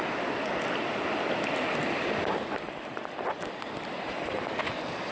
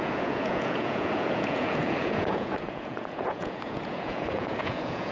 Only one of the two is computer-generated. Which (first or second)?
second